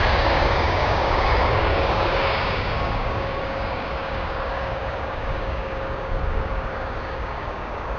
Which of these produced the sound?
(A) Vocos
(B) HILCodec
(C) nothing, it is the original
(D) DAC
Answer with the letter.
D